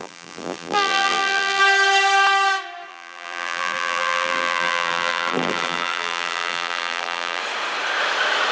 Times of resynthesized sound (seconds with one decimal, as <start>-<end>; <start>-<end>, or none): 0.0-1.6; 2.9-7.4

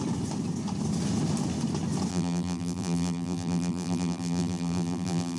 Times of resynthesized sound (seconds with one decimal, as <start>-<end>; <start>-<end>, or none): 2.1-5.4